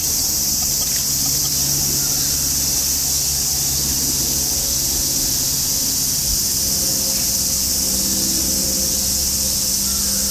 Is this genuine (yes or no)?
yes